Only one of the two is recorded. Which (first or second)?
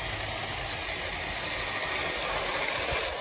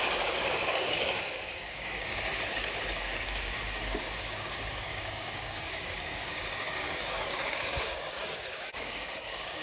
first